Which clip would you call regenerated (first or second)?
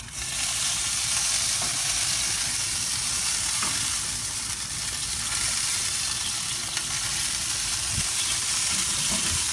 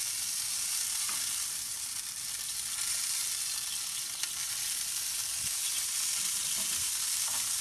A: first